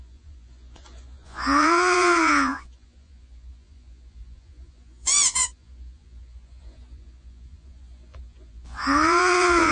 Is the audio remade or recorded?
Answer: remade